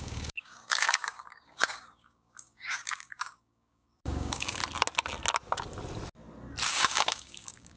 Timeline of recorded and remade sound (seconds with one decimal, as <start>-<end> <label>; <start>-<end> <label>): 0.0-4.6 remade; 4.6-6.7 recorded; 6.7-7.8 remade